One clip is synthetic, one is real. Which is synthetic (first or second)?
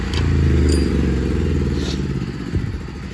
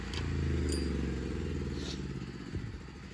first